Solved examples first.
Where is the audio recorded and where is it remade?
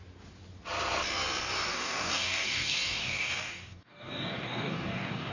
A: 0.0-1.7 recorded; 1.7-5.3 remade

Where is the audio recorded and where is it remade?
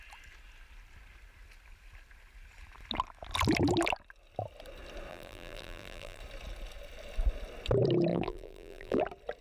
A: 0.0-5.1 recorded; 5.1-6.2 remade; 6.2-8.1 recorded; 8.1-9.0 remade; 9.0-9.4 recorded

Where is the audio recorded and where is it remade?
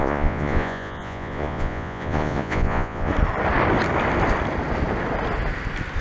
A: 0.0-3.1 remade; 3.1-6.0 recorded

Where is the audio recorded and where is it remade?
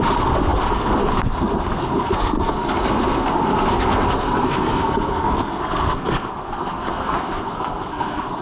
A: 0.0-8.4 remade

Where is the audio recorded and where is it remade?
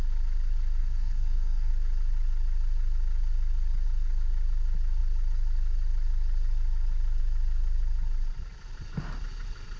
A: 0.0-0.8 recorded; 0.8-1.7 remade; 1.7-9.8 recorded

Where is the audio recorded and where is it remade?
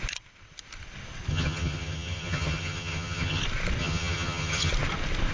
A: 0.0-1.3 recorded; 1.3-3.4 remade; 3.4-3.8 recorded; 3.8-4.7 remade; 4.7-5.3 recorded